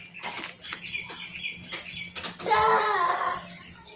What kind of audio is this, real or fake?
real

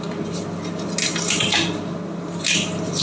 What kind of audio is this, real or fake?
real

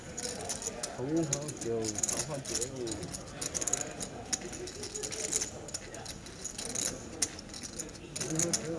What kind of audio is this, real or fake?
real